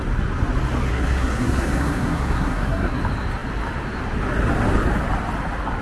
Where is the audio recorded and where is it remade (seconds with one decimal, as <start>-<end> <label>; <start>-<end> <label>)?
0.0-0.9 recorded; 0.9-3.0 remade; 3.0-5.8 recorded